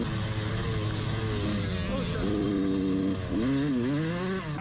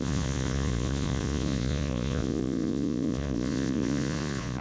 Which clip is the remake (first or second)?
second